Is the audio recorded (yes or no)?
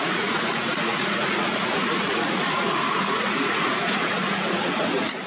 no